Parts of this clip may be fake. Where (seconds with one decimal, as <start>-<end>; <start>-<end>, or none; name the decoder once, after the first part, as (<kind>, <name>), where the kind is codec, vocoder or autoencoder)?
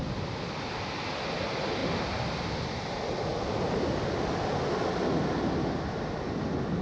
none